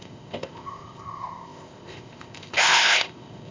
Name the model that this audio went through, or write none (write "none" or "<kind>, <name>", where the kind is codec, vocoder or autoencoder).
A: codec, ZipCodec